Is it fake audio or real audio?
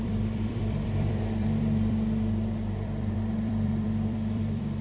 fake